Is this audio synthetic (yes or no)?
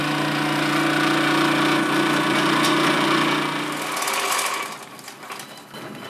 no